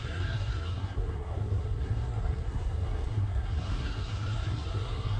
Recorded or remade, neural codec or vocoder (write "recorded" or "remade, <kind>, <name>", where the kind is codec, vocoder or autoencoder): remade, codec, SNAC